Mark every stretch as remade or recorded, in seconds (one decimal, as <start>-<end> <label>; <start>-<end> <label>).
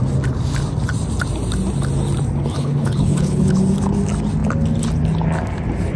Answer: 0.0-2.5 recorded; 2.5-3.5 remade; 3.5-6.0 recorded